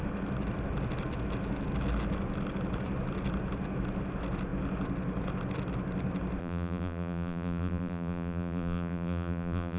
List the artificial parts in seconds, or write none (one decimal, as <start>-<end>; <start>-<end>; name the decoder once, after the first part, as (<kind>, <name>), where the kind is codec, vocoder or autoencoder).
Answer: 6.4-9.8 (vocoder, BigVGAN v2)